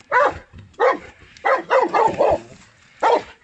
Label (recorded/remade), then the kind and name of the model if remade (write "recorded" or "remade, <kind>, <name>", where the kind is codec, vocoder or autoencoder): recorded